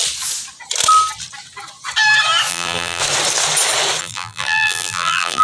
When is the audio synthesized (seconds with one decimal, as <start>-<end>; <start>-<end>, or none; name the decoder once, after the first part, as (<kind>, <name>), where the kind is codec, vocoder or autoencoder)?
2.5-3.0 (vocoder, BigVGAN v2); 4.0-5.4